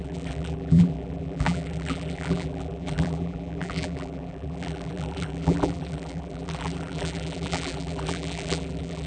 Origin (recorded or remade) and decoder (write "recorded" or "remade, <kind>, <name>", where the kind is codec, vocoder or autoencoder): remade, vocoder, BigVGAN v2